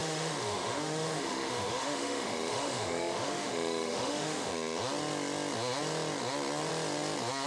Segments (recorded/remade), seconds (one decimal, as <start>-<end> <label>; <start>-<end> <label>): 0.0-4.5 remade; 4.5-7.5 recorded